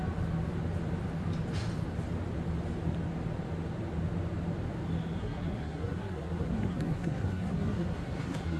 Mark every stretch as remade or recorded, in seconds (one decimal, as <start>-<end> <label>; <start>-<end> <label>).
0.0-5.2 recorded; 5.2-8.6 remade